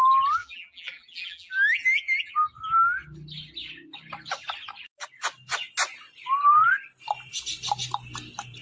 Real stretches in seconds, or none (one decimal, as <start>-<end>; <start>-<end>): 0.0-0.4; 2.3-8.6